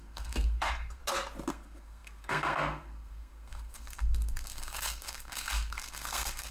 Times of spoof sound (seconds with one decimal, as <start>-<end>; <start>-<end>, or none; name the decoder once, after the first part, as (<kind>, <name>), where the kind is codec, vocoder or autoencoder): 0.0-1.0 (codec, SNAC); 1.5-6.5